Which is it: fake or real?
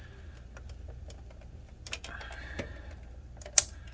real